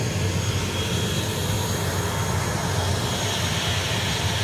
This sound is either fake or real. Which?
real